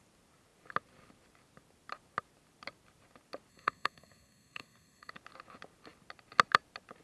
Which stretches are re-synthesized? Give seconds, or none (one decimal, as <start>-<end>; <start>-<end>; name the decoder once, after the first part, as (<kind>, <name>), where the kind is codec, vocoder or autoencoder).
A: 3.5-5.1 (codec, SNAC)